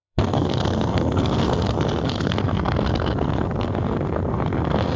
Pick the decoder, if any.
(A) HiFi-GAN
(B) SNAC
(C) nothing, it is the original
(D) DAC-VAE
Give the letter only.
B